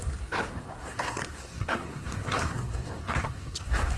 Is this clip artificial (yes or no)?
yes